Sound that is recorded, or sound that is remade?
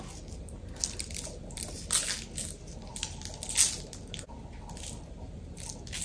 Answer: recorded